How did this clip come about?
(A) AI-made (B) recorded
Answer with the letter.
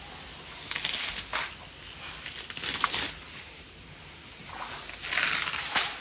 B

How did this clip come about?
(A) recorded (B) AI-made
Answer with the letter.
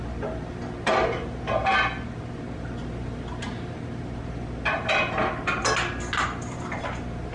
A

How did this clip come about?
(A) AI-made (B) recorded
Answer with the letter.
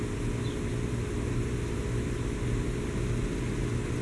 B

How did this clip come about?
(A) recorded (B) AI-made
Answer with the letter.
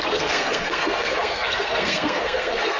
B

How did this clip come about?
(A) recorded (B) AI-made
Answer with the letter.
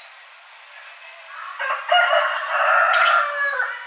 A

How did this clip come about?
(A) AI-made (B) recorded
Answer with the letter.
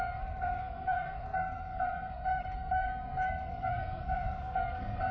A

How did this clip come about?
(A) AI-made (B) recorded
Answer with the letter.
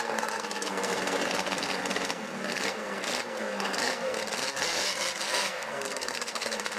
A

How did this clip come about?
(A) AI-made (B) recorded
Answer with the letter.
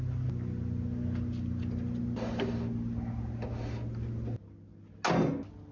B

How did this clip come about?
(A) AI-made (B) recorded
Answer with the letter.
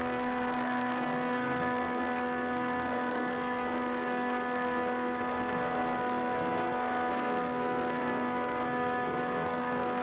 A